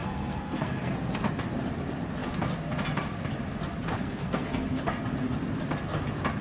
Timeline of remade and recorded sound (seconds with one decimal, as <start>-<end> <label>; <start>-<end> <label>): 0.0-0.9 remade; 0.9-4.0 recorded; 4.0-4.8 remade; 4.8-6.4 recorded